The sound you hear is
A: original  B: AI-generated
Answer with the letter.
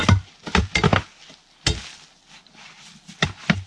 A